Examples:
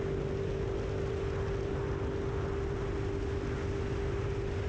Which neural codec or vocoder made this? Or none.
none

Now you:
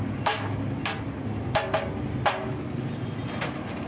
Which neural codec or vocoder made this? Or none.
none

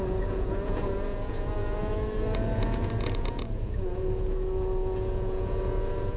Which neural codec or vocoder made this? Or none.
vocoder, Vocos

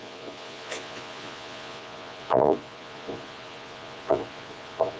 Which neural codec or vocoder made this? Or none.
vocoder, Vocos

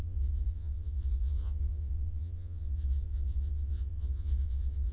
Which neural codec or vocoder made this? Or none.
vocoder, Vocos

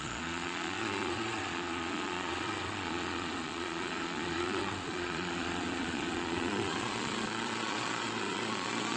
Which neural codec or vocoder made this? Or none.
vocoder, Vocos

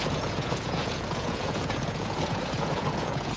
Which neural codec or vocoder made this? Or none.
vocoder, Vocos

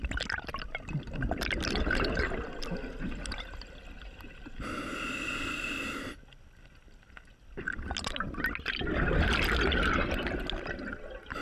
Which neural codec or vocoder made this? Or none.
none